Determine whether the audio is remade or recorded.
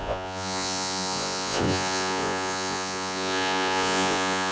remade